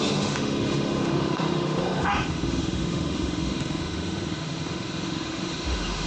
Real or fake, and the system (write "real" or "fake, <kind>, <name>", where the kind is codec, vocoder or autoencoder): fake, autoencoder, DAC-VAE